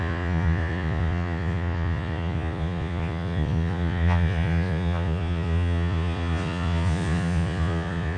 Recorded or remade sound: remade